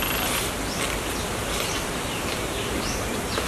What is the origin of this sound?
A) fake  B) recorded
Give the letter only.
B